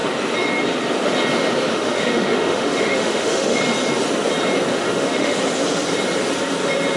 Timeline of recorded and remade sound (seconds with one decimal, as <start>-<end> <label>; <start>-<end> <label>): 0.0-1.7 recorded; 1.7-3.6 remade; 3.6-4.7 recorded; 4.7-5.4 remade; 5.4-7.0 recorded